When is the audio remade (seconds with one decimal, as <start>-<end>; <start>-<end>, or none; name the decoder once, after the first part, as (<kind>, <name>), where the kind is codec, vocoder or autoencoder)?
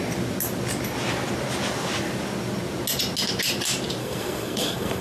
4.0-5.0 (codec, SNAC)